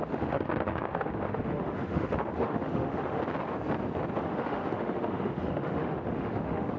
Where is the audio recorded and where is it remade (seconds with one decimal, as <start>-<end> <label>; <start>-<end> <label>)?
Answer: 0.0-3.2 remade; 3.2-4.2 recorded; 4.2-6.8 remade